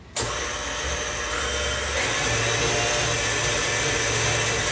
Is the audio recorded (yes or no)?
yes